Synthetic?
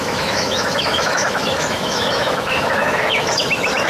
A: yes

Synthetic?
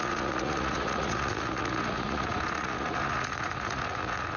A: yes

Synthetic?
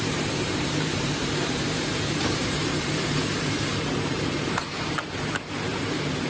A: yes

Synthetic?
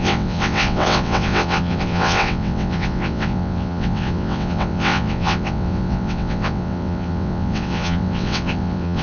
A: yes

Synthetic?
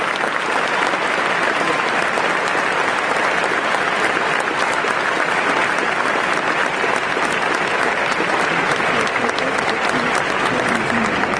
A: no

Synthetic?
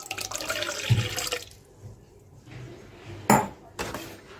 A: no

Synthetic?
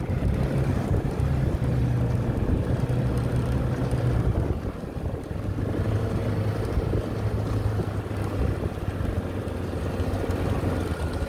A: no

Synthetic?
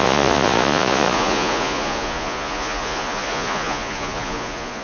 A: yes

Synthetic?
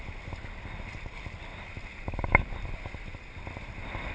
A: no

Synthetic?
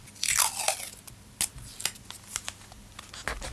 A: no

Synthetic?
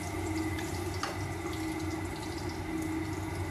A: no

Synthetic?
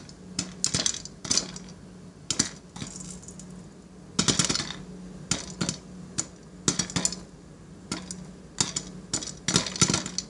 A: no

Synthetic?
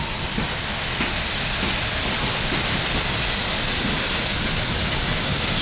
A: no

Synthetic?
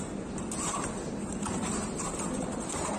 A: no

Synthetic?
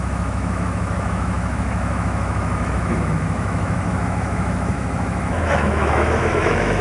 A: yes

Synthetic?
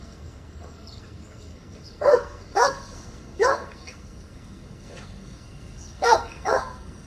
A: yes